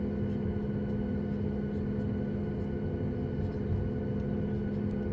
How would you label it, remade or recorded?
recorded